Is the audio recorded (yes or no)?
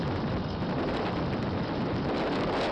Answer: yes